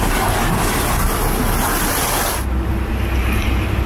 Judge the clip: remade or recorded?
recorded